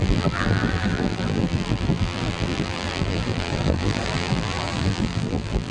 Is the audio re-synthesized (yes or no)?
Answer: yes